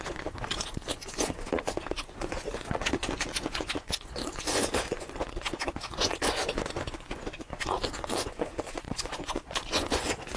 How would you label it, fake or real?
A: fake